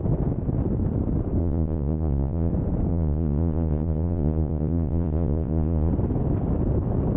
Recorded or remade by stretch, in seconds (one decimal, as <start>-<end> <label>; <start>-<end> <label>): 0.0-1.4 recorded; 1.4-2.5 remade; 2.5-2.9 recorded; 2.9-5.9 remade; 5.9-7.2 recorded